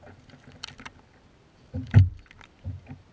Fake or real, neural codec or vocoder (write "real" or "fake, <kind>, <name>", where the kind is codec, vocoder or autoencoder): real